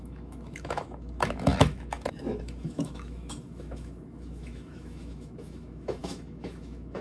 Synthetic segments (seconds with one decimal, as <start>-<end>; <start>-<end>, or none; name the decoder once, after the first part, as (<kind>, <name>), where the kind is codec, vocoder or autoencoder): 0.0-7.0 (autoencoder, DAC-VAE)